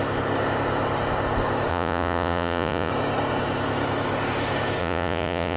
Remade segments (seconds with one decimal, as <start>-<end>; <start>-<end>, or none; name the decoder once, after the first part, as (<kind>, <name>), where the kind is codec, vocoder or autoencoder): 1.7-2.9 (vocoder, Vocos); 4.8-5.6